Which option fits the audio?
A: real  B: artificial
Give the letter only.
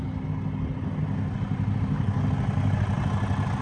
A